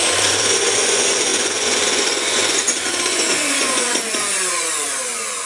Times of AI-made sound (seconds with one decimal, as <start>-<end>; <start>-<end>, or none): 0.0-5.5